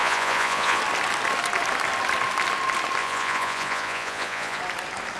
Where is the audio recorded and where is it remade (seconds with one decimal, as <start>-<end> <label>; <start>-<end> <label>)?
0.0-0.8 remade; 0.8-3.0 recorded; 3.0-4.6 remade; 4.6-5.2 recorded